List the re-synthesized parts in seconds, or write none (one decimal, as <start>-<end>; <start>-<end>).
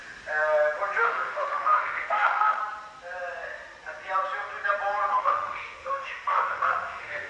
1.0-2.6; 5.1-7.3